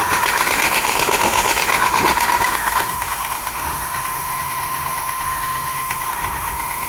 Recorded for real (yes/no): no